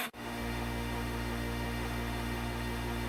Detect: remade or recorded remade